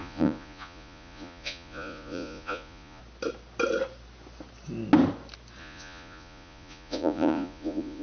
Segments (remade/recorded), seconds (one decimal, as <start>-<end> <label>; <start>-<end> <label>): 0.0-3.0 remade; 3.0-5.6 recorded; 5.6-8.0 remade